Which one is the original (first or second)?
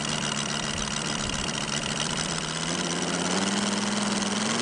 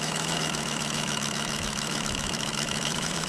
first